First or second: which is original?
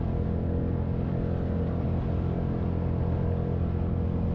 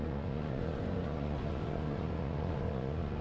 first